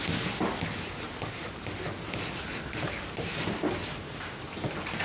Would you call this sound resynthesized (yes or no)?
no